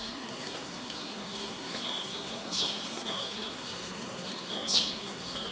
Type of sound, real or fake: fake